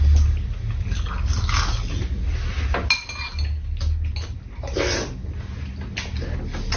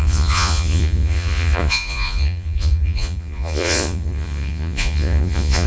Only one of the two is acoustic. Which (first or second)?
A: first